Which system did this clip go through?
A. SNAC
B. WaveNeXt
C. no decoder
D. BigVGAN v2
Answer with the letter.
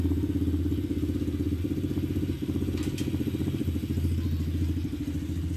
C